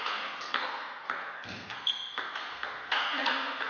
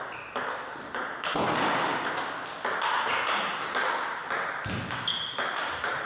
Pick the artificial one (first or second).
first